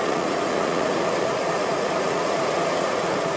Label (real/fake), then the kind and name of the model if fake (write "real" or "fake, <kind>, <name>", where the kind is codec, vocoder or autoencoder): fake, vocoder, Vocos